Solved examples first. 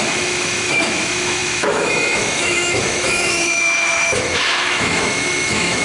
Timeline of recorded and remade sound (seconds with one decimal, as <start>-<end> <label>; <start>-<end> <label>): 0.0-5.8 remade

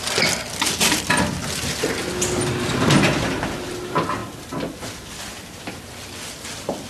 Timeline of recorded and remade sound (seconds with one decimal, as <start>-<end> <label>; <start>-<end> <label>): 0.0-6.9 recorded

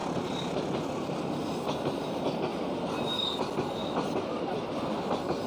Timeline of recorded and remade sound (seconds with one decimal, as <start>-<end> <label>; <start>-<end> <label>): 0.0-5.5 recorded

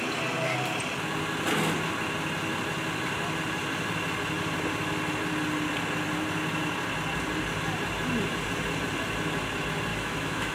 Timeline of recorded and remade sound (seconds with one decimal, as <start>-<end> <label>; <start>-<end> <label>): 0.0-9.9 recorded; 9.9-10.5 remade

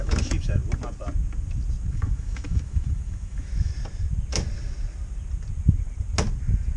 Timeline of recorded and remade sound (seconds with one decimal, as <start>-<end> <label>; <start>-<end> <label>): 0.0-0.6 remade; 0.6-1.9 recorded; 1.9-3.7 remade; 3.7-6.8 recorded

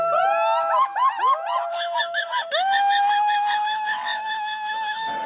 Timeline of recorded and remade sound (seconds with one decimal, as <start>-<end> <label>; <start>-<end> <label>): 0.0-1.7 recorded; 1.7-5.3 remade

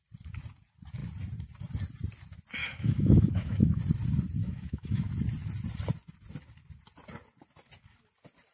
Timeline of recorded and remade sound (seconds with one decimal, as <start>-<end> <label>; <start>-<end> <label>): 0.0-2.6 recorded; 2.6-3.8 remade; 3.8-4.4 recorded; 4.4-5.1 remade; 5.1-8.5 recorded